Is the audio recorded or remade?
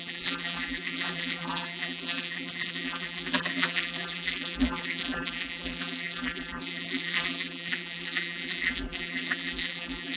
remade